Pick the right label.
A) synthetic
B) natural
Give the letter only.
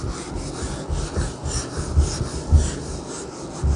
B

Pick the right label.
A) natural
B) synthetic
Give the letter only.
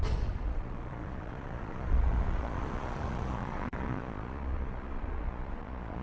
B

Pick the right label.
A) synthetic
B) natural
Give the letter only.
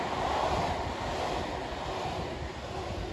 B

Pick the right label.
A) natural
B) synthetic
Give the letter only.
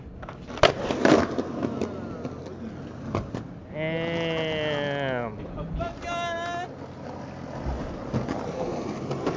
A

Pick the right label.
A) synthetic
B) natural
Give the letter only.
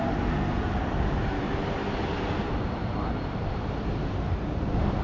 A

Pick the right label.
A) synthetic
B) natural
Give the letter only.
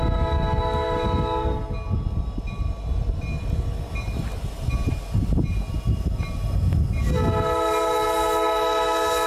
B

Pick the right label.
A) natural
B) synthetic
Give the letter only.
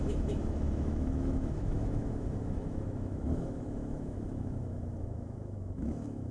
B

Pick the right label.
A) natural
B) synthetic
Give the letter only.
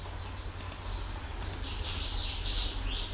A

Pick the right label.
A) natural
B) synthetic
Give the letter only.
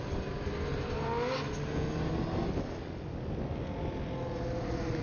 A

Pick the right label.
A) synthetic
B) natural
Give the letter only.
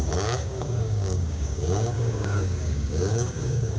A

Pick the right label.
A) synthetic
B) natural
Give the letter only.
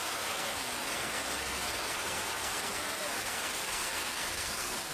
A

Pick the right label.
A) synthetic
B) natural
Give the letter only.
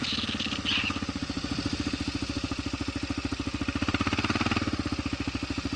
B